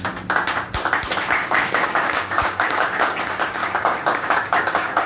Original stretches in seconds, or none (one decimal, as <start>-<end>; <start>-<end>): 0.0-1.4; 3.2-3.6